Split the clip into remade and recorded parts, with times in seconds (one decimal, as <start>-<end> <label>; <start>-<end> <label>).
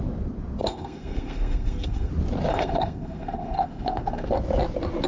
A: 0.0-0.6 recorded; 0.6-2.1 remade; 2.1-2.5 recorded; 2.5-4.3 remade; 4.3-5.1 recorded